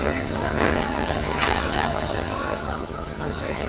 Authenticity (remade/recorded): remade